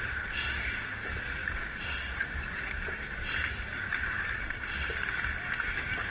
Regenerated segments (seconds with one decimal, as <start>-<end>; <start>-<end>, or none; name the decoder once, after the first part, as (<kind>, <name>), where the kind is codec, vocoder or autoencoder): 1.4-5.1 (vocoder, BigVGAN v2)

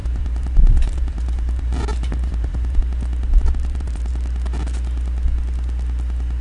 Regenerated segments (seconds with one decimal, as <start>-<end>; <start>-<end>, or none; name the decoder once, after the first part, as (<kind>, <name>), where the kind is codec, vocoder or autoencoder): 0.0-2.8 (vocoder, BigVGAN v2); 3.4-4.1

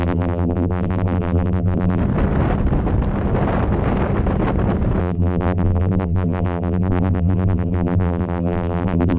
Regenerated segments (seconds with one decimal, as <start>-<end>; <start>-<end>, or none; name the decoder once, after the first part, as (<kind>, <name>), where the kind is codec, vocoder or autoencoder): 0.0-2.0 (vocoder, BigVGAN v2); 5.0-9.2

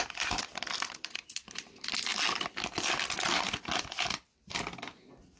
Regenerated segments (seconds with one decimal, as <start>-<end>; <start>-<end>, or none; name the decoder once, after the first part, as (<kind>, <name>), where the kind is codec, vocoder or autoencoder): 0.0-2.1 (vocoder, BigVGAN v2)

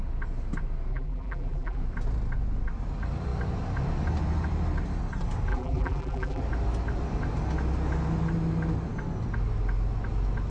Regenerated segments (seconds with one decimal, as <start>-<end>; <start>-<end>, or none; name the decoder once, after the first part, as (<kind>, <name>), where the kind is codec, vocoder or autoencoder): 0.9-1.8 (vocoder, BigVGAN v2); 5.5-6.4

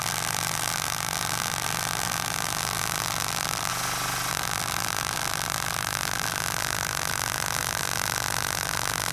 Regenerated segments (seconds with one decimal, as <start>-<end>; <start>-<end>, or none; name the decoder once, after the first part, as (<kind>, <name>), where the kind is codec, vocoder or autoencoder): 0.0-3.7 (vocoder, BigVGAN v2); 4.3-9.1

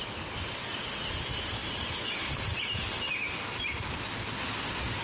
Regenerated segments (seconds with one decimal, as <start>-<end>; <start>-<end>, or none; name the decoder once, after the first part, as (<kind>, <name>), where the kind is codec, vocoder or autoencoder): 1.6-3.9 (vocoder, BigVGAN v2)

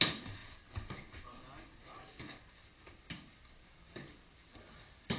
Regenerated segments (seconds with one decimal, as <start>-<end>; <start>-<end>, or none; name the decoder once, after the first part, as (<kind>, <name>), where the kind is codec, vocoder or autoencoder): none